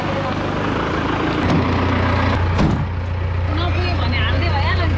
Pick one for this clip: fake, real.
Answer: real